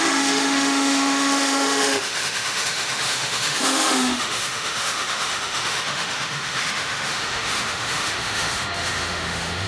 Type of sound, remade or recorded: remade